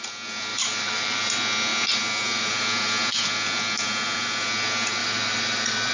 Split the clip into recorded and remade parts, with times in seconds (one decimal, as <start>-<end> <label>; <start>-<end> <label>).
0.0-0.5 recorded; 0.5-1.2 remade; 1.2-5.0 recorded; 5.0-5.9 remade